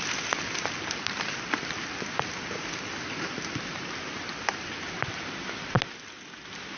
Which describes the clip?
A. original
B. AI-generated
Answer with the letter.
A